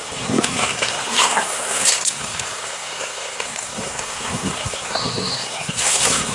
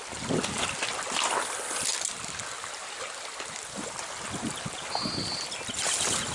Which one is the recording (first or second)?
second